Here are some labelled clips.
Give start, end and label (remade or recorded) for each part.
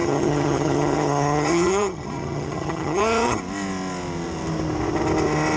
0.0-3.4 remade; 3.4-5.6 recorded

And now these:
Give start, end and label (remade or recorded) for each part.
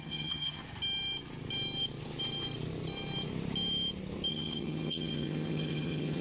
0.0-0.6 remade; 0.6-4.3 recorded; 4.3-6.2 remade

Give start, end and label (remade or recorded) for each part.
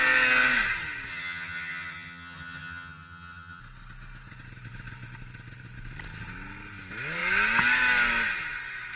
0.0-1.1 recorded; 1.1-3.6 remade; 3.6-9.0 recorded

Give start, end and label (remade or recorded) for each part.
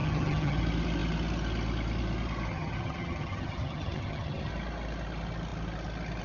0.0-0.6 remade; 0.6-2.5 recorded; 2.5-4.5 remade; 4.5-6.2 recorded